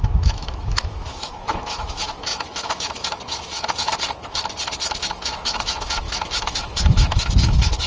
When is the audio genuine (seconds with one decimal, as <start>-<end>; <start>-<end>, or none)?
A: 3.9-5.0